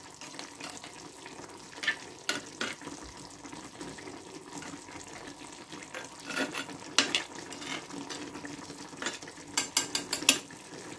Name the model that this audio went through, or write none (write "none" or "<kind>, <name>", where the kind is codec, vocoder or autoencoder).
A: none